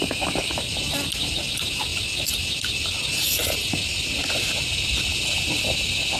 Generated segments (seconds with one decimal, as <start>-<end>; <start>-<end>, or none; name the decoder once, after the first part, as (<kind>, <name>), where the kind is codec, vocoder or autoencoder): none